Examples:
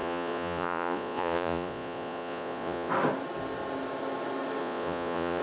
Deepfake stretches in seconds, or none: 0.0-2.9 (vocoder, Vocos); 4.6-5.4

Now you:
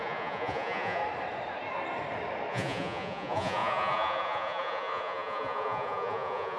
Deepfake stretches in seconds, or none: 0.0-1.0 (vocoder, Vocos); 2.5-6.6